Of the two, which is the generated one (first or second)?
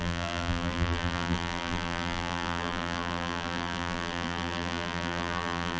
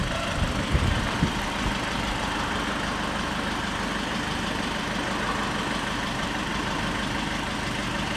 first